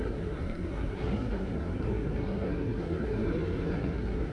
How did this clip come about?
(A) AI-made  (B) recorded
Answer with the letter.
A